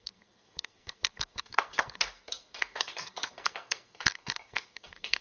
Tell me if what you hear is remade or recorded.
remade